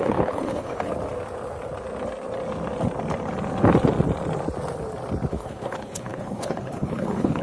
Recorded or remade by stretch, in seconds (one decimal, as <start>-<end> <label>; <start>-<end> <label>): 0.0-0.9 remade; 0.9-5.3 recorded; 5.3-7.4 remade